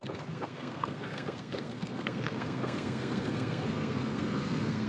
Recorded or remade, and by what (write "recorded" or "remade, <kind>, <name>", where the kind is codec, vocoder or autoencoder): remade, codec, SNAC